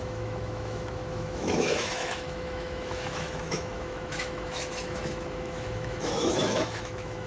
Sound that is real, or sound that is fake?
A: fake